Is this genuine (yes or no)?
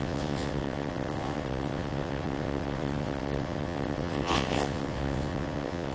no